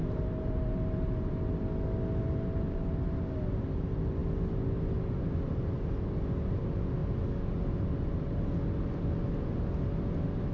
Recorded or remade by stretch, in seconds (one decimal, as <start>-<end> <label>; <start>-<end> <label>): 0.0-1.3 remade; 1.3-10.5 recorded